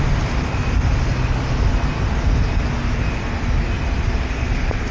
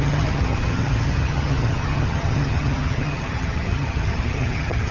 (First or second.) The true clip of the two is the first